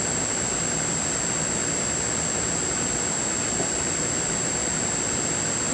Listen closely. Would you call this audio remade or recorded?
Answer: recorded